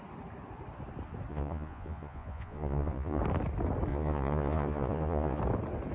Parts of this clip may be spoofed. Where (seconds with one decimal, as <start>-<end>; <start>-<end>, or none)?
1.3-3.2; 3.9-5.4